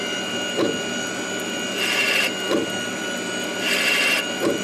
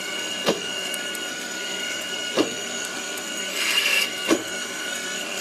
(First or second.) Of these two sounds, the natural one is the first